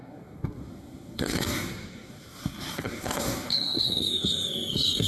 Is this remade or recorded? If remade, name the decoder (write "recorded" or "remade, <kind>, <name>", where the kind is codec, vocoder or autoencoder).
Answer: remade, codec, SNAC